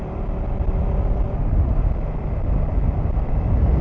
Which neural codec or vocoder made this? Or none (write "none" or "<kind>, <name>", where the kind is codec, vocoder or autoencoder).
none